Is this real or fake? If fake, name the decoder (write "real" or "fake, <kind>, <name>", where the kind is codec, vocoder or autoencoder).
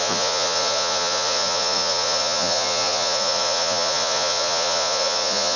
fake, vocoder, Vocos